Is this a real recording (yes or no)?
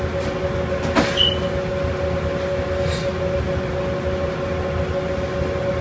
yes